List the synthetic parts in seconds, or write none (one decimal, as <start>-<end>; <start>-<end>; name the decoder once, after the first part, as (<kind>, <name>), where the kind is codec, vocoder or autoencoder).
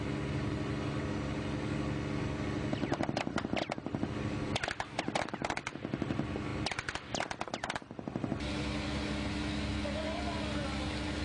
none